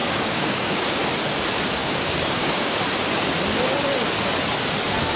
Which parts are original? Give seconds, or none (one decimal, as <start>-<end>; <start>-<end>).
1.0-1.8; 2.8-5.2